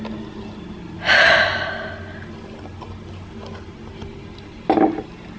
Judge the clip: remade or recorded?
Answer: recorded